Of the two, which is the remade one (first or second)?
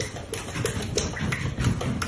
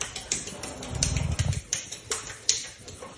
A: first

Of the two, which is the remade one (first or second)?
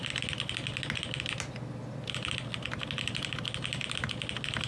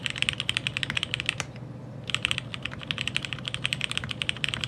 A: second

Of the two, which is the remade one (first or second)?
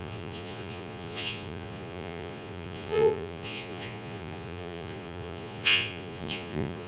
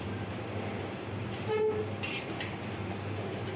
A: first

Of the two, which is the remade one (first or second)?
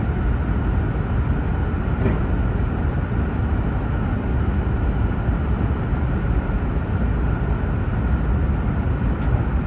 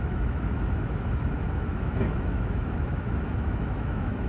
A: second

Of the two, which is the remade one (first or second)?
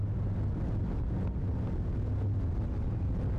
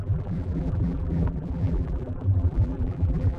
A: second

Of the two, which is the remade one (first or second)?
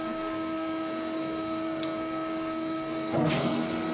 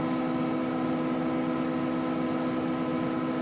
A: first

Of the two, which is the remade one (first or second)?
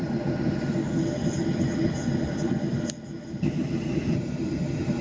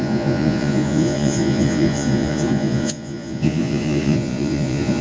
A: second